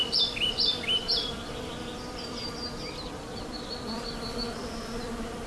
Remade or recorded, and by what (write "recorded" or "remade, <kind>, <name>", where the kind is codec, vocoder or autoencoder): remade, vocoder, BigVGAN v2